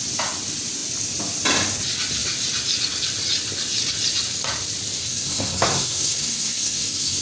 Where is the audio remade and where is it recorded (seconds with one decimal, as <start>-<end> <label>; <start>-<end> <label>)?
0.0-5.0 recorded; 5.0-7.2 remade